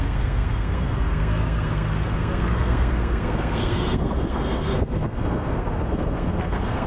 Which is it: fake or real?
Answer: fake